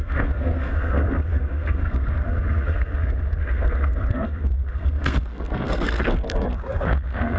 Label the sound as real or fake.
fake